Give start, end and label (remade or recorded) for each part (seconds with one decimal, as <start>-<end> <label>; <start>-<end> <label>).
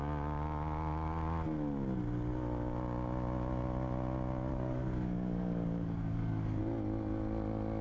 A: 0.0-4.5 recorded; 4.5-6.6 remade; 6.6-7.8 recorded